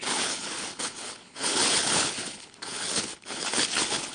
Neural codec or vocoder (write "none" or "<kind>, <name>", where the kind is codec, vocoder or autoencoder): codec, HILCodec